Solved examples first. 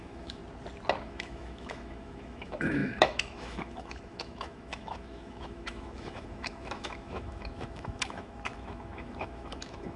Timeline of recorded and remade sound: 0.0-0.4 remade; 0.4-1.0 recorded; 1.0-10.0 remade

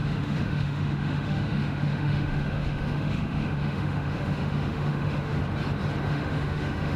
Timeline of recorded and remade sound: 0.0-5.4 remade; 5.4-6.1 recorded; 6.1-7.0 remade

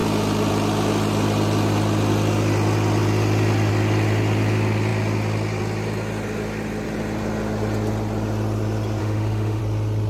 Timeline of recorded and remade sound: 0.0-9.0 recorded; 9.0-9.6 remade; 9.6-10.1 recorded

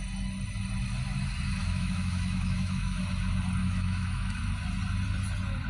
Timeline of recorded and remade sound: 0.0-1.6 recorded; 1.6-3.0 remade; 3.0-3.6 recorded; 3.6-4.4 remade; 4.4-5.7 recorded

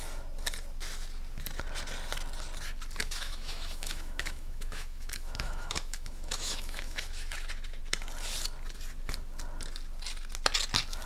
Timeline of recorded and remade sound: 0.0-3.0 recorded; 3.0-7.3 remade; 7.3-11.1 recorded

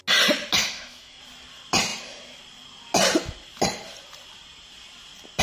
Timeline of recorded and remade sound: 0.0-0.6 recorded; 0.6-1.2 remade; 1.2-5.4 recorded